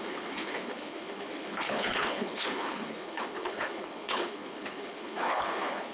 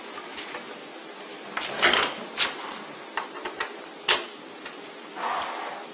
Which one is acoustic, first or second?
second